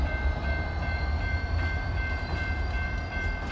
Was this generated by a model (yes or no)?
yes